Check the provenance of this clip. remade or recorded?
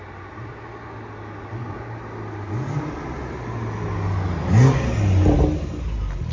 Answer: recorded